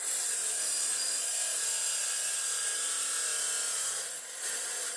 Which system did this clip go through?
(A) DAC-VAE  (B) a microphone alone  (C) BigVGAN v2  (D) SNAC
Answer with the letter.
B